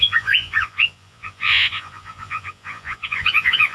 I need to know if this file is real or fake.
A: fake